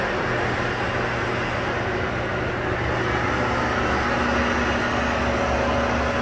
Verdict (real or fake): real